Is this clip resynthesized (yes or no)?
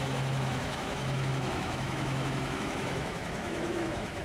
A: yes